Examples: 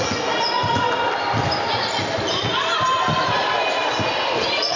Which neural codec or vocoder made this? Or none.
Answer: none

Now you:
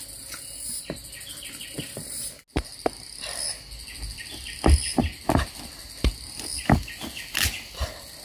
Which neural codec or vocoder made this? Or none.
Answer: none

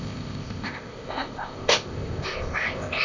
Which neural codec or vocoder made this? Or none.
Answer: codec, ZipCodec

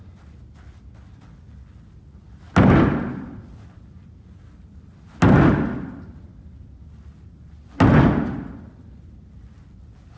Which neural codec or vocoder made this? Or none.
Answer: none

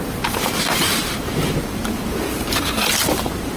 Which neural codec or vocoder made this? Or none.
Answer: vocoder, BigVGAN v2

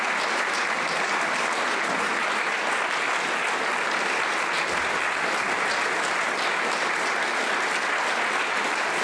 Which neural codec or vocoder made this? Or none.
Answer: none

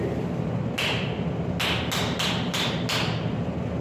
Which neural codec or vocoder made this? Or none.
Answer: none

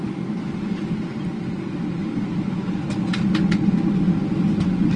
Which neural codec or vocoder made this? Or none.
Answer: none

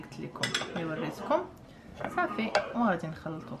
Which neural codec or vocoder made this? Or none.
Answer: none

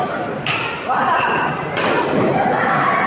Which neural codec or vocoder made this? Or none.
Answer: none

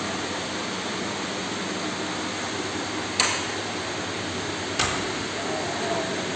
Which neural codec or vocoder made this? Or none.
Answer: none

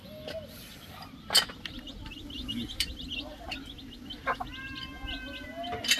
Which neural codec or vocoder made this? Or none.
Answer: none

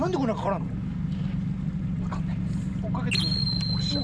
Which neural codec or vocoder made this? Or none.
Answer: none